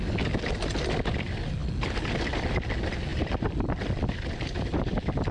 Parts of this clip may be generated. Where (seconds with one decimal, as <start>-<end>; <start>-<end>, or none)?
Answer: none